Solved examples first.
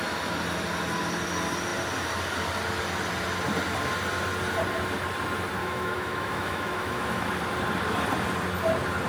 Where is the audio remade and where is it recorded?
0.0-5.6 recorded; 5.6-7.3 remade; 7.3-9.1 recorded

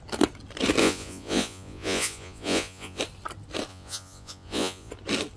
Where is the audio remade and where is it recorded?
0.0-0.8 recorded; 0.8-3.0 remade; 3.0-3.7 recorded; 3.7-4.9 remade; 4.9-5.4 recorded

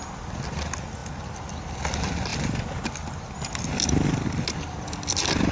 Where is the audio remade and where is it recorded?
0.0-5.5 recorded

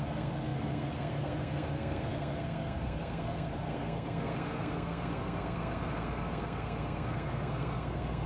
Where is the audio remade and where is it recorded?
0.0-8.3 remade

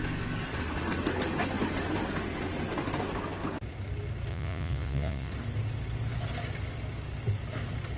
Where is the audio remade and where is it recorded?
0.0-4.3 recorded; 4.3-5.3 remade; 5.3-8.0 recorded